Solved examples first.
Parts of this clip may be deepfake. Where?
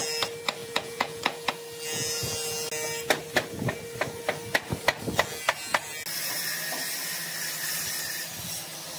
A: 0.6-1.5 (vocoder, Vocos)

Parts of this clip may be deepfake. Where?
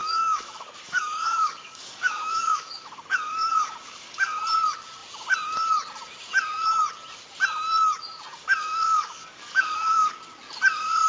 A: 0.0-4.4 (codec, DAC); 8.3-10.1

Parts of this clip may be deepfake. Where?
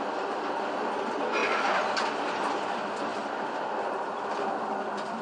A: 0.0-5.2 (vocoder, BigVGAN v2)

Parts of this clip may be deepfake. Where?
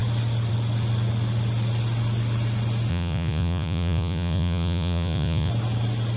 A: 2.9-5.5 (vocoder, Vocos)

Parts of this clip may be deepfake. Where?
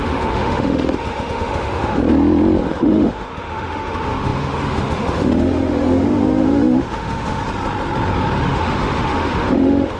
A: 0.0-2.0 (autoencoder, DAC-VAE); 2.6-7.4; 8.4-10.0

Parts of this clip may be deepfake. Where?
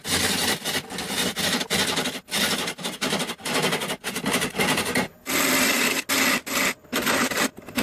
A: none